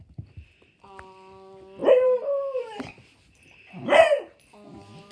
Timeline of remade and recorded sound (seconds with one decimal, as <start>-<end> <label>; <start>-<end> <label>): 0.0-1.8 recorded; 1.8-3.7 remade; 3.7-5.1 recorded